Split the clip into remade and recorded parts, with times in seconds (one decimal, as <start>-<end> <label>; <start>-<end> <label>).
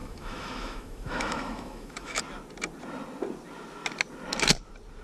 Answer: 0.0-2.2 remade; 2.2-5.0 recorded